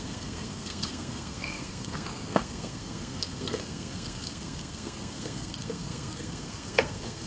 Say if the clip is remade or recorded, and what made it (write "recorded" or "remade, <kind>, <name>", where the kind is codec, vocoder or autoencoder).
remade, codec, SNAC